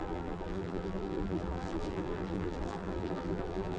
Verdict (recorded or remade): remade